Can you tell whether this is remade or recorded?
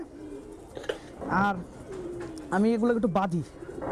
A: recorded